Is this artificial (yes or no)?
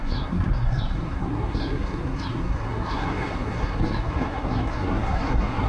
yes